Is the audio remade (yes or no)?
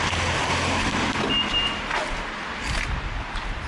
no